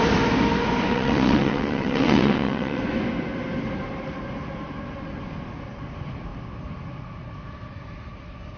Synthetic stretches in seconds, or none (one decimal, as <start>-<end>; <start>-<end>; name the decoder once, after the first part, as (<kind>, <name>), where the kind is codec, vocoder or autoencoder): 0.9-2.8 (vocoder, WaveNeXt)